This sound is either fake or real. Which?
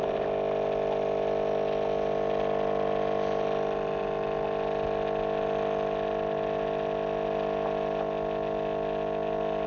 real